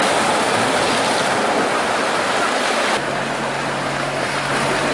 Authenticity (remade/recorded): recorded